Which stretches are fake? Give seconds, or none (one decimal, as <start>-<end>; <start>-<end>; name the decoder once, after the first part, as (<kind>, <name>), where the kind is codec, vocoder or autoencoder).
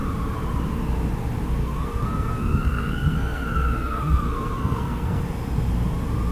1.6-5.2 (codec, SNAC)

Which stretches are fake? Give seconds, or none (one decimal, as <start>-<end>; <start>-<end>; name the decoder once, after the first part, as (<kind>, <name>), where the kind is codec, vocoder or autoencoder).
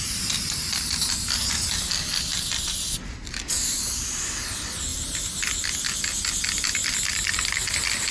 6.8-8.1 (vocoder, BigVGAN v2)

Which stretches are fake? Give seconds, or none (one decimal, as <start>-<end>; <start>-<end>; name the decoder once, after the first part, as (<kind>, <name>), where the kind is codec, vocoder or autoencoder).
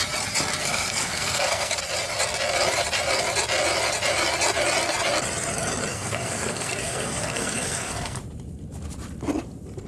0.6-1.8 (codec, SNAC); 5.9-8.2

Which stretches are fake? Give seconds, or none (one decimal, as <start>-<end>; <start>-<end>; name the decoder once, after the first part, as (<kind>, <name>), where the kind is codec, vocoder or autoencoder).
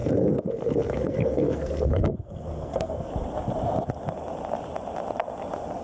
0.0-3.1 (codec, SNAC)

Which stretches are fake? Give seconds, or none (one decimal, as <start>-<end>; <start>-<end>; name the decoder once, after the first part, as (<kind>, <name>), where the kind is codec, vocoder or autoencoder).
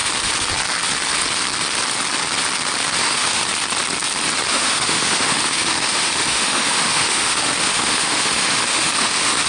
3.0-3.4 (autoencoder, DAC-VAE); 4.5-9.5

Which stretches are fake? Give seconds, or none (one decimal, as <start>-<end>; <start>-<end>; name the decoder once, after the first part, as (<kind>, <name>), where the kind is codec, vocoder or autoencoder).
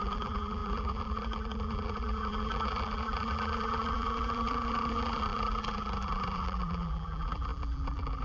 0.0-8.2 (vocoder, BigVGAN v2)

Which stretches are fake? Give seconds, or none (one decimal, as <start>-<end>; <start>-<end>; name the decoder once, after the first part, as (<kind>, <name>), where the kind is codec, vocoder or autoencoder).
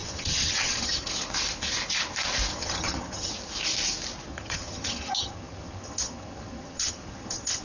0.0-1.1 (vocoder, HiFi-GAN); 2.5-3.3; 4.3-7.6